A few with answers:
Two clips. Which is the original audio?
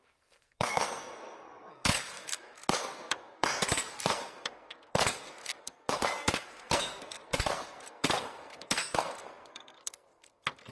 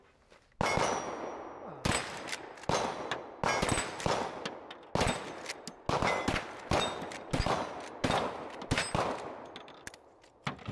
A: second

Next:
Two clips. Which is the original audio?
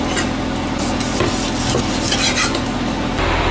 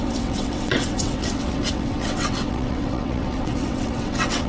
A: first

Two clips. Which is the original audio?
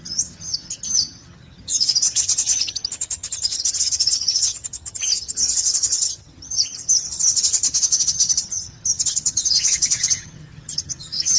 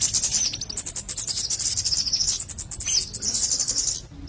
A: second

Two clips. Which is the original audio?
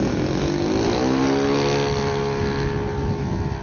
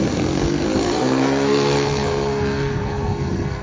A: first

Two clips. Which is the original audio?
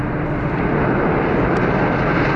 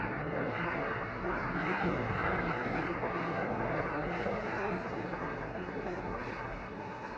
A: first